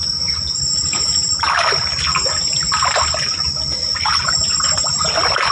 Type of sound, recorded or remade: recorded